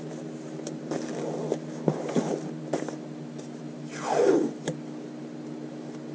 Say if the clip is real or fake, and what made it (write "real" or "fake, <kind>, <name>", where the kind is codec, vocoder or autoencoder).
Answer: real